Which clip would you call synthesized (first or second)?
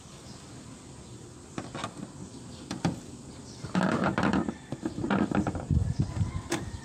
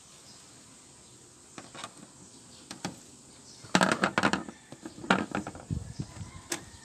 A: first